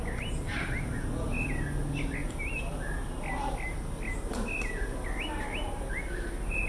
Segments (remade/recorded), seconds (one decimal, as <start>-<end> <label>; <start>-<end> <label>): 0.0-6.7 recorded